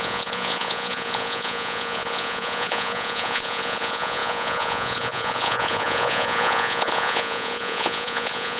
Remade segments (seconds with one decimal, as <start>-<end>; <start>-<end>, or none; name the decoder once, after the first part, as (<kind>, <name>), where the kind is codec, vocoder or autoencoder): 0.0-8.6 (vocoder, Vocos)